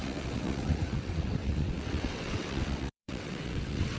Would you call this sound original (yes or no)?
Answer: no